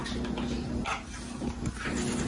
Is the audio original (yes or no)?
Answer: yes